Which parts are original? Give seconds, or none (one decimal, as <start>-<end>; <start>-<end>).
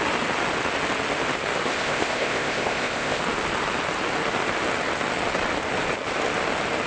0.0-1.7; 3.2-6.9